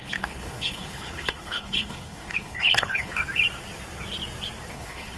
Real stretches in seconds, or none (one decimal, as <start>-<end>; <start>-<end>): 3.2-4.7